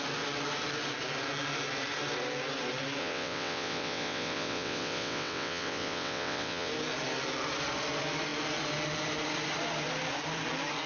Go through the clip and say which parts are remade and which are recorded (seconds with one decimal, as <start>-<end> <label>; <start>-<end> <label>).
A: 0.0-3.0 recorded; 3.0-6.7 remade; 6.7-10.9 recorded